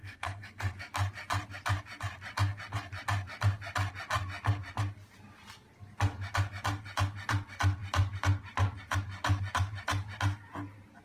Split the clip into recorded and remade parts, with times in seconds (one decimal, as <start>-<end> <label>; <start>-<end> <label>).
0.0-0.7 remade; 0.7-11.0 recorded